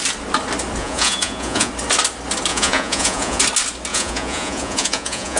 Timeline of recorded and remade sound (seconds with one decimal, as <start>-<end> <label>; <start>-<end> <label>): 0.0-0.8 recorded; 0.8-1.7 remade; 1.7-2.5 recorded; 2.5-3.4 remade; 3.4-3.9 recorded; 3.9-5.4 remade